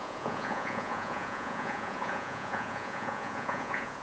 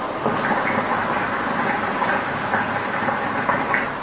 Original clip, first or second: second